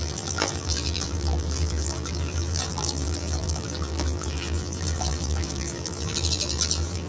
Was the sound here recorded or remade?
remade